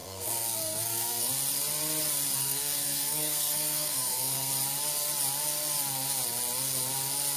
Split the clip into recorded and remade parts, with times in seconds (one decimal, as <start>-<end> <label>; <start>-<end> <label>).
0.0-1.3 remade; 1.3-2.4 recorded; 2.4-4.5 remade; 4.5-7.4 recorded